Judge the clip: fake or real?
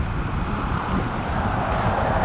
real